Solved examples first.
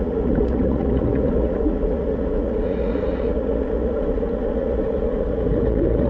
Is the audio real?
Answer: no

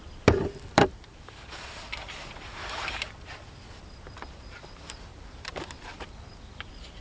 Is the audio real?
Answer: no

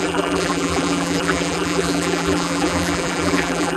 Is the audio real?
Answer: no